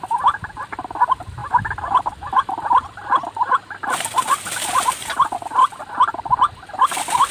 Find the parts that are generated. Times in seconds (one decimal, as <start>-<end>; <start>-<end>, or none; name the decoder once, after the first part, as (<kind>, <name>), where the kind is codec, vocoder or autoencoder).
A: 1.4-5.8 (vocoder, BigVGAN v2)

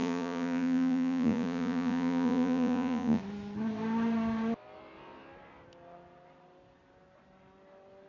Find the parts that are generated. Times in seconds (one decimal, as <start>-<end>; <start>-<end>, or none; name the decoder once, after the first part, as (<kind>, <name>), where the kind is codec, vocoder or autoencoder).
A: 0.0-3.2 (vocoder, Vocos)

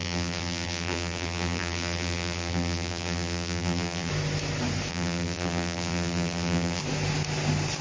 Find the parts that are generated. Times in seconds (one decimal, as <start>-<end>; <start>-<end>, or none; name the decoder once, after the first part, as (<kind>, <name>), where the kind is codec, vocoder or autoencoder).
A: 0.0-4.1 (vocoder, BigVGAN v2); 4.9-6.8

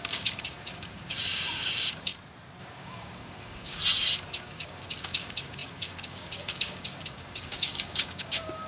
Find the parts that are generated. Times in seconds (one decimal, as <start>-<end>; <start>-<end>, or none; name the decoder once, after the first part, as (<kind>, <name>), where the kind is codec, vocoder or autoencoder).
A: 0.0-2.1 (codec, DAC); 2.6-3.8; 4.4-8.7

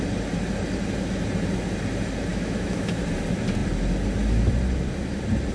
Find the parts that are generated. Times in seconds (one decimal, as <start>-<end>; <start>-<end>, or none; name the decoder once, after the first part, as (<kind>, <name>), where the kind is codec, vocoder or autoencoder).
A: 2.3-3.0 (autoencoder, DAC-VAE)

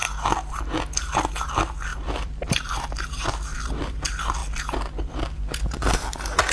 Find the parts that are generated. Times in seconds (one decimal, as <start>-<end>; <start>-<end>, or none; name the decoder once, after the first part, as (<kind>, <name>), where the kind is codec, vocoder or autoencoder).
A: 1.9-2.8 (vocoder, BigVGAN v2); 3.5-4.0

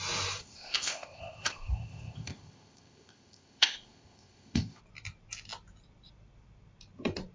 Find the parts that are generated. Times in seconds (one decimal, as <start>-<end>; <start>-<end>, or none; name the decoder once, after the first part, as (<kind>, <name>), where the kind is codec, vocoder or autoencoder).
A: 0.4-4.8 (codec, ZipCodec)